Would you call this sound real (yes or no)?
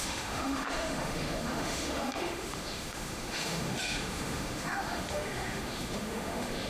no